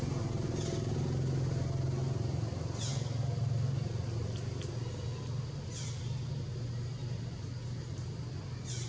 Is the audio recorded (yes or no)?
yes